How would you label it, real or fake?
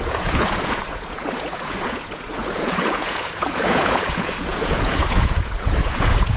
fake